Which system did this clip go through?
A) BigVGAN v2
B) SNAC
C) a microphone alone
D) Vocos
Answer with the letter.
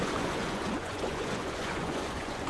D